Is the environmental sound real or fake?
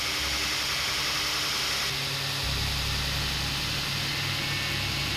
real